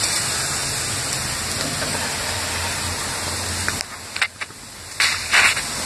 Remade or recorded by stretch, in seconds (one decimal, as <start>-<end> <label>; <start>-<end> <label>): 0.0-5.9 recorded

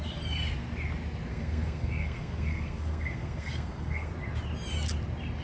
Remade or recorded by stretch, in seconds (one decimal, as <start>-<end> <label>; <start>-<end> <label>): 0.0-1.3 recorded; 1.3-4.1 remade; 4.1-5.4 recorded

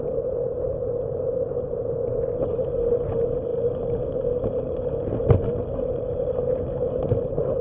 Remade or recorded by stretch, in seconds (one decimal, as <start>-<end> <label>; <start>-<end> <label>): 0.0-7.6 recorded

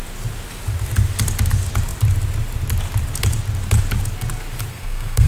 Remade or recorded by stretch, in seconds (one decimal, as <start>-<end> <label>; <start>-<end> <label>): 0.0-4.7 recorded; 4.7-5.3 remade

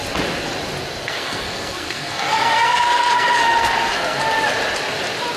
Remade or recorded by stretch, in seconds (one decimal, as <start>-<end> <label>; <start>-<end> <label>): 0.0-1.0 recorded; 1.0-4.2 remade; 4.2-5.4 recorded

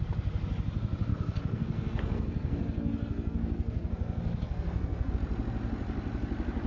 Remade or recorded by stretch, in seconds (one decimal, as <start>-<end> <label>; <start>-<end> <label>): 0.0-1.1 recorded; 1.1-5.1 remade; 5.1-6.7 recorded